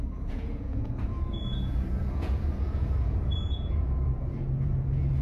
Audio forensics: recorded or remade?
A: remade